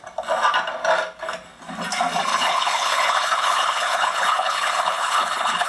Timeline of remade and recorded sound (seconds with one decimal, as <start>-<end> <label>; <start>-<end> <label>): 0.0-2.3 recorded; 2.3-5.7 remade